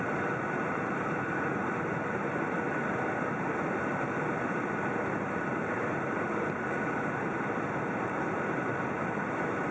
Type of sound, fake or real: fake